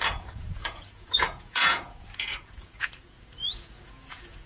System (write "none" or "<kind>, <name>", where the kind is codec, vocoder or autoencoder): vocoder, Vocos